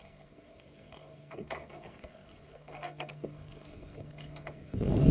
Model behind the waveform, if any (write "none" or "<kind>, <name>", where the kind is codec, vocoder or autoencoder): codec, SNAC